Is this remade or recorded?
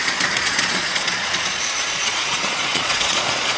remade